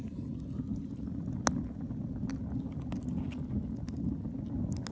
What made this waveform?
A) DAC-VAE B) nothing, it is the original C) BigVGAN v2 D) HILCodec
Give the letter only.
B